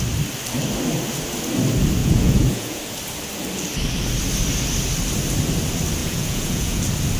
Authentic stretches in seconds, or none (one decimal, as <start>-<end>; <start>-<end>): 0.0-2.0; 2.8-6.0; 6.8-7.2